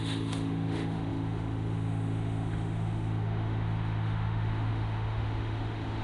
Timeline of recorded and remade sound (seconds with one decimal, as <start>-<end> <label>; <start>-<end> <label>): 0.0-6.0 remade